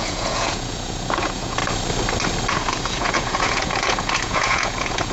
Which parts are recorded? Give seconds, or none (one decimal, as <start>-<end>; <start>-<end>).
1.6-2.5